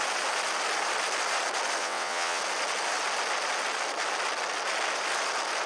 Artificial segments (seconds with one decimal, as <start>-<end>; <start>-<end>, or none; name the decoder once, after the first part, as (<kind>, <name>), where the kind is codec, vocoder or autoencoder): 1.8-2.4 (vocoder, WaveNeXt)